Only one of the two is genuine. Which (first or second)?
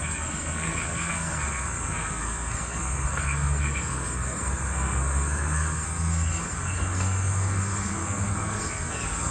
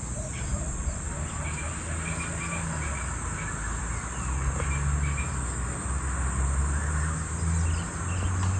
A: second